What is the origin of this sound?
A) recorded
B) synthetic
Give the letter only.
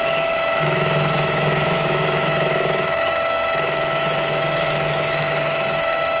B